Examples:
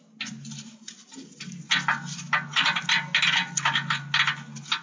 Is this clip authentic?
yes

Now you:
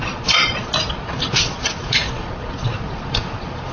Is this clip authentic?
no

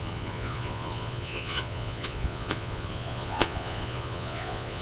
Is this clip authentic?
no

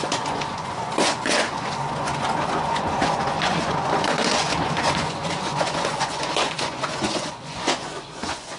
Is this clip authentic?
no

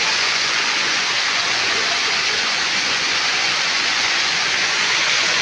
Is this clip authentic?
no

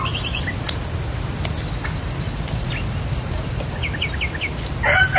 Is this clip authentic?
yes